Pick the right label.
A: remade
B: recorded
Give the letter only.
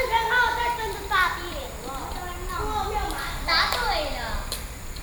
B